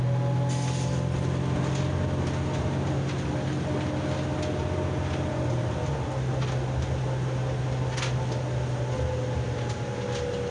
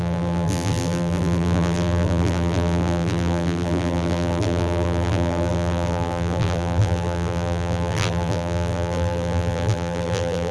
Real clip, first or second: first